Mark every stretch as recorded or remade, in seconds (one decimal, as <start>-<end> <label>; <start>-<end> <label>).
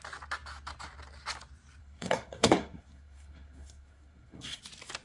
0.0-1.8 recorded; 1.8-4.6 remade; 4.6-5.0 recorded